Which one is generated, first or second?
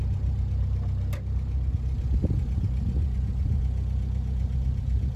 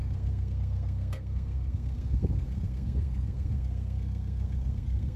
second